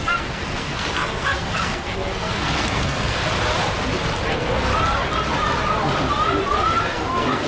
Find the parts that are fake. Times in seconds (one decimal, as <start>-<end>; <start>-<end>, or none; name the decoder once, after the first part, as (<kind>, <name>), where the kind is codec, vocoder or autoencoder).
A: 0.0-3.2 (codec, SNAC); 4.3-4.7; 6.8-7.5